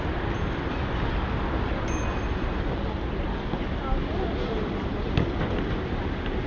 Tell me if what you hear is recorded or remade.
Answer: recorded